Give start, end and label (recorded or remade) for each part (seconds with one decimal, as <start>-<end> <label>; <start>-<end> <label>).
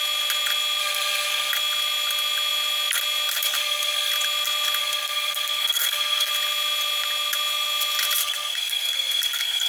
0.0-0.8 recorded; 0.8-1.5 remade; 1.5-3.5 recorded; 3.5-4.1 remade; 4.1-4.8 recorded; 4.8-6.3 remade; 6.3-8.2 recorded; 8.2-9.7 remade